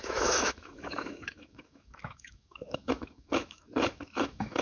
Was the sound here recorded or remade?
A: remade